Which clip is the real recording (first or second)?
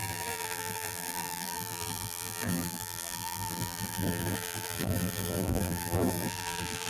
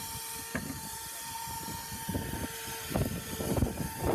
second